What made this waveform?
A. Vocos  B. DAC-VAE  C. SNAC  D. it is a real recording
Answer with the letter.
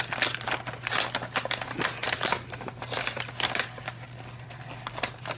D